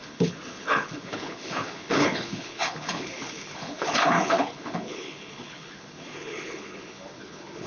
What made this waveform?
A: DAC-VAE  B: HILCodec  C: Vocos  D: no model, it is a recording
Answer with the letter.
B